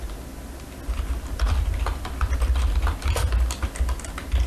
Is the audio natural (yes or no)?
yes